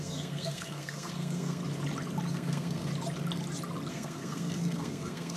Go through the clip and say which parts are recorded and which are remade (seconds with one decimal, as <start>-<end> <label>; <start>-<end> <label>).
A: 0.0-1.6 remade; 1.6-2.3 recorded; 2.3-2.9 remade; 2.9-3.9 recorded; 3.9-5.4 remade